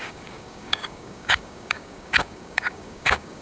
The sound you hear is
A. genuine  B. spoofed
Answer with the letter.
B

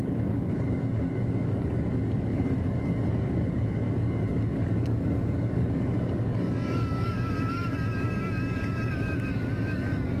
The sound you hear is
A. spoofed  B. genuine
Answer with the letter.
A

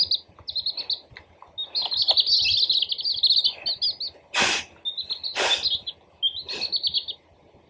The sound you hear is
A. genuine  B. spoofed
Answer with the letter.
A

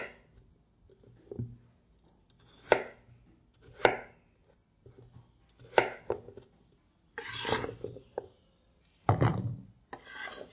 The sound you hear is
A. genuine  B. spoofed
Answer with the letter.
A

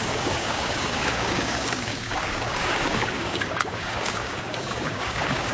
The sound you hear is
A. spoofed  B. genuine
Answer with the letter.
A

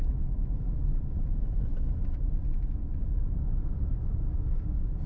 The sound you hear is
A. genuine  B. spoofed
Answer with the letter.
A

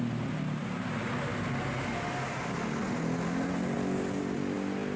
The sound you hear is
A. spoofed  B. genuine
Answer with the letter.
B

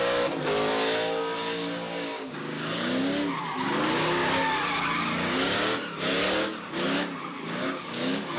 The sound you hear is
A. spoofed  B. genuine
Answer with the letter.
A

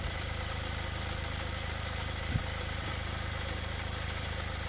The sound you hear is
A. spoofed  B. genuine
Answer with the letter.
B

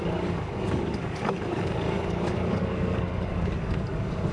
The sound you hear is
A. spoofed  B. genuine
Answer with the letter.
A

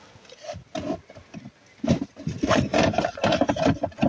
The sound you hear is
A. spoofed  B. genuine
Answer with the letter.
B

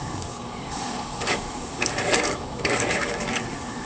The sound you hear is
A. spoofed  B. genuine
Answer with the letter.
A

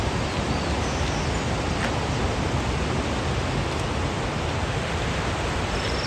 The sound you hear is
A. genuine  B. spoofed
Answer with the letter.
A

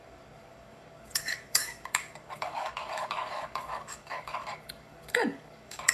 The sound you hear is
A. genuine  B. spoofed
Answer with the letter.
B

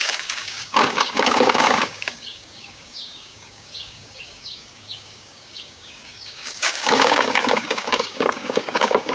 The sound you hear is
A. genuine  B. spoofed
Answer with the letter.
B